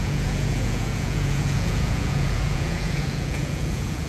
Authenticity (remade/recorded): remade